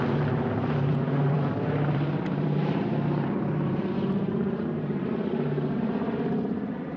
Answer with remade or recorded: remade